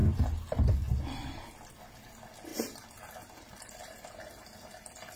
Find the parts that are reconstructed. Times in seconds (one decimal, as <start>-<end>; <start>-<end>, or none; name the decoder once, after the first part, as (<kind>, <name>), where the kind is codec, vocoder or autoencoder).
2.5-4.4 (vocoder, BigVGAN v2)